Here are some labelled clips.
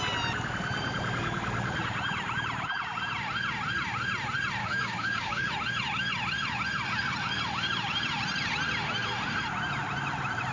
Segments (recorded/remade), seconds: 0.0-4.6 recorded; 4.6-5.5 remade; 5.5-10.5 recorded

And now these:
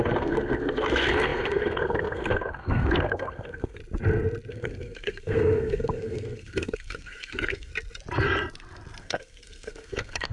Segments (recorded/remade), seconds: 0.0-3.8 remade; 3.8-4.5 recorded; 4.5-7.7 remade; 7.7-9.0 recorded; 9.0-10.3 remade

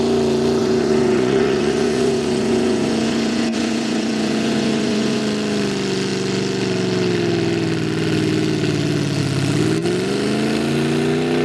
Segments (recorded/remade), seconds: 0.0-0.6 recorded; 0.6-5.2 remade; 5.2-11.4 recorded

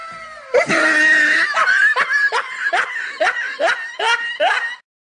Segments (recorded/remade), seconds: 0.0-0.8 remade; 0.8-1.8 recorded; 1.8-3.7 remade; 3.7-5.1 recorded

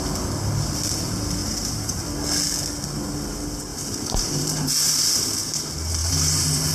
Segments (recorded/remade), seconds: 0.0-1.4 recorded; 1.4-2.0 remade; 2.0-3.7 recorded; 3.7-4.7 remade; 4.7-6.0 recorded; 6.0-6.7 remade